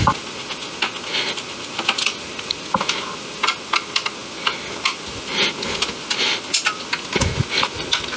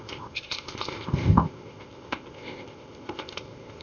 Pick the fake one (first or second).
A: second